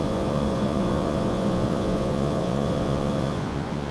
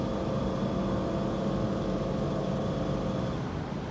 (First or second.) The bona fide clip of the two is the second